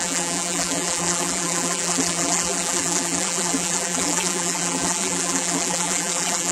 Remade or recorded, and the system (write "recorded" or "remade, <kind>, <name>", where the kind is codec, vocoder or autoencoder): remade, vocoder, BigVGAN v2